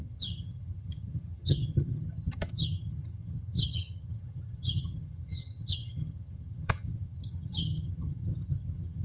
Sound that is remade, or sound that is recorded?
remade